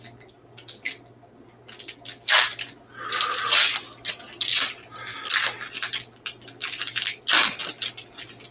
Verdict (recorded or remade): recorded